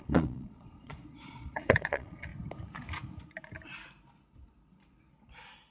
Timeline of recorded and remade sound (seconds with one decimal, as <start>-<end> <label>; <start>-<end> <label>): 0.0-2.3 remade; 2.3-5.7 recorded